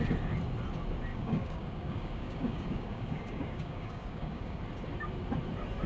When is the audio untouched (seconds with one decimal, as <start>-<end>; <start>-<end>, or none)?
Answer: 0.0-1.1; 4.6-5.9